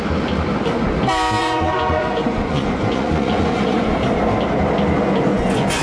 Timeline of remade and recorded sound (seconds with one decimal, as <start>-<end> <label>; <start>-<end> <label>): 0.0-1.4 recorded; 1.4-4.0 remade; 4.0-5.3 recorded; 5.3-5.8 remade